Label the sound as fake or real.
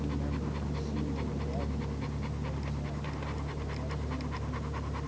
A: real